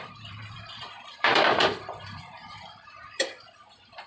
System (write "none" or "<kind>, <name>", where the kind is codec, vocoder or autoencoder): vocoder, BigVGAN v2